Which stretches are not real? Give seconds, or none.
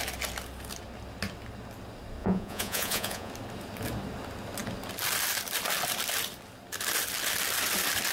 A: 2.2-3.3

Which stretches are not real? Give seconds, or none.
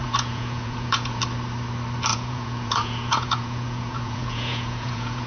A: 0.0-1.2; 2.1-5.3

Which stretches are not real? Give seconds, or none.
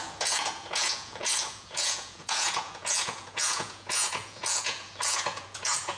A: 0.0-6.0